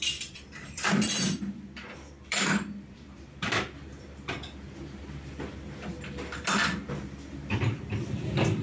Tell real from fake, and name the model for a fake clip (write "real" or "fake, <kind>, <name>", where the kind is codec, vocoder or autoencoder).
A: fake, vocoder, BigVGAN v2